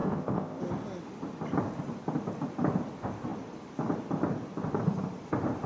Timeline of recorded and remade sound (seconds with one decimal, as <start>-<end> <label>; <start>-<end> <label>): 0.0-0.6 remade; 0.6-5.7 recorded